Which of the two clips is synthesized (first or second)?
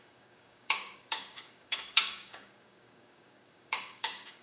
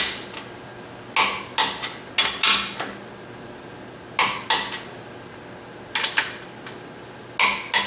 first